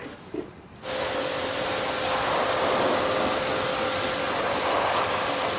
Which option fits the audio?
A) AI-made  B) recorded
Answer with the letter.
B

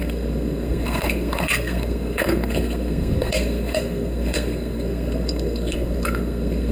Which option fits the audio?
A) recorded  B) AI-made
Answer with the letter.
B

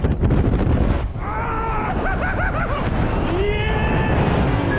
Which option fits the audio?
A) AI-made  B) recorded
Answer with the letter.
B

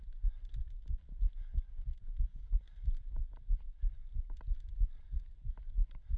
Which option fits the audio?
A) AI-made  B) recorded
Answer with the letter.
B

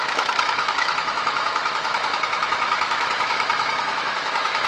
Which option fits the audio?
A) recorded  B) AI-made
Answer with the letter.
B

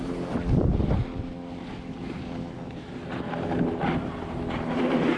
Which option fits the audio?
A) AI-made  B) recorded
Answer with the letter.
B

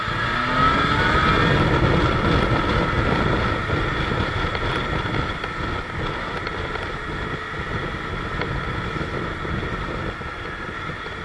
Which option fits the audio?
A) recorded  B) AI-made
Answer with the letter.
A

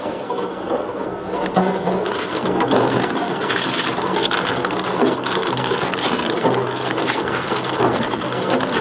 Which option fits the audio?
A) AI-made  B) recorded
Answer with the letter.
A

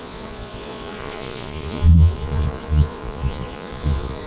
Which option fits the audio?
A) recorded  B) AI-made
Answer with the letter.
B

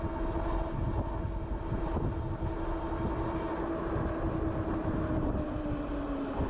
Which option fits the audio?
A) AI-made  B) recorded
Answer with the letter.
B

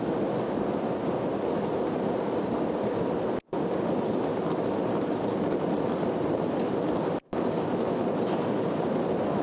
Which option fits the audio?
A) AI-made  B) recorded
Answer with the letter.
B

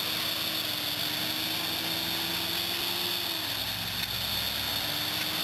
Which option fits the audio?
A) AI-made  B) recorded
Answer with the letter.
B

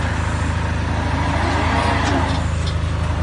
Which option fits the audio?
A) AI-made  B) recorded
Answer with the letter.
B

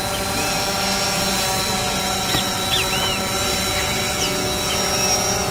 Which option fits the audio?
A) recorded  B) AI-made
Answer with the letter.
A